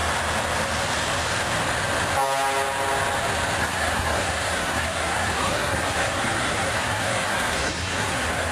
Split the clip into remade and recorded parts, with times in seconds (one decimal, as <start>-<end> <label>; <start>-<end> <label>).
0.0-3.6 recorded; 3.6-8.5 remade